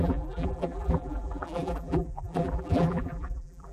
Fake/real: fake